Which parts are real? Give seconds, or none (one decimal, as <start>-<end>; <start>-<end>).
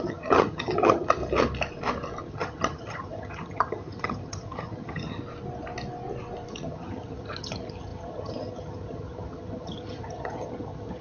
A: 1.2-2.2; 5.2-6.5